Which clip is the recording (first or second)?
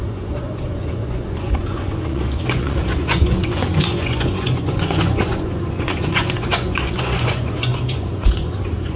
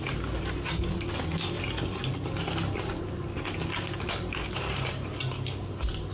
second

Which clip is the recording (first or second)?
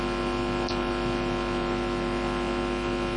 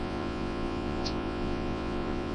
first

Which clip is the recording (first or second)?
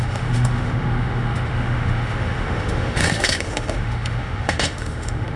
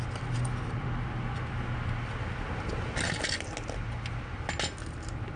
second